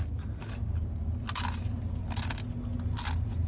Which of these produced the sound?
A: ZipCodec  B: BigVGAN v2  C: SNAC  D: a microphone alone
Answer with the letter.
D